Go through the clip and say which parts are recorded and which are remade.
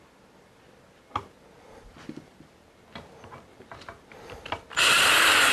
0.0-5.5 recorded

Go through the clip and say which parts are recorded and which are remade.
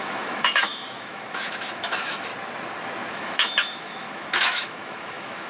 0.0-2.3 remade; 2.3-3.1 recorded; 3.1-5.5 remade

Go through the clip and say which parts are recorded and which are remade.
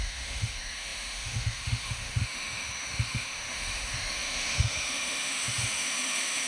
0.0-6.5 remade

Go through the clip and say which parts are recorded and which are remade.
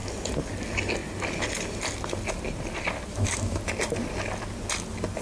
0.0-3.1 recorded; 3.1-3.6 remade; 3.6-5.2 recorded